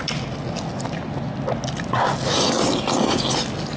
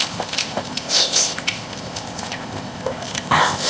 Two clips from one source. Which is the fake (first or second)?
second